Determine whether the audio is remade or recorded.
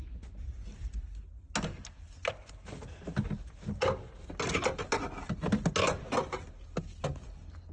recorded